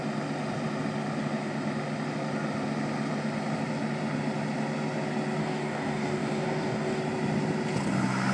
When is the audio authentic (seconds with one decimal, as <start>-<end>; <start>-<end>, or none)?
0.0-5.4; 7.0-8.3